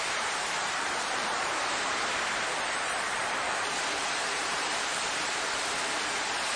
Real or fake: fake